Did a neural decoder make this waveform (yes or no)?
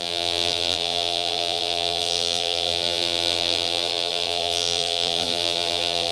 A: yes